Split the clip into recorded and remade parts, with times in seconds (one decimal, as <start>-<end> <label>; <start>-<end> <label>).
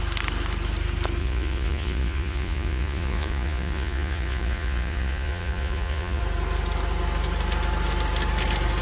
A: 0.0-1.2 recorded; 1.2-6.2 remade; 6.2-8.8 recorded